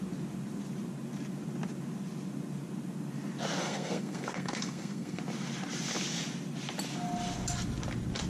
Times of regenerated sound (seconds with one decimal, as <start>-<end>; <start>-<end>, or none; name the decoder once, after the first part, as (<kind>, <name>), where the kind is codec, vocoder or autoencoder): 3.6-5.2 (codec, SNAC)